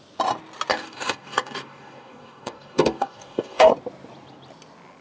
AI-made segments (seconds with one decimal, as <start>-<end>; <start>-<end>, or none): 0.7-3.7